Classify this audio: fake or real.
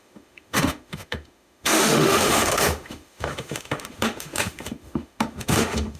fake